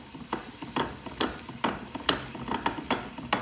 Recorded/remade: recorded